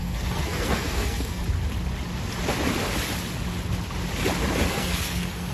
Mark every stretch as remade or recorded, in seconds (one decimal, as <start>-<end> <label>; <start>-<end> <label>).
0.0-1.4 remade; 1.4-4.7 recorded; 4.7-5.5 remade